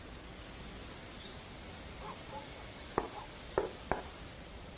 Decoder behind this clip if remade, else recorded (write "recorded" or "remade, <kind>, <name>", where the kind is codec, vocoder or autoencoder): recorded